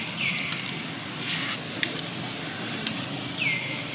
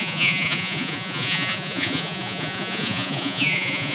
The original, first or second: first